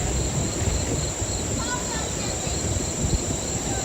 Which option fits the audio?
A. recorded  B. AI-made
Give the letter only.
B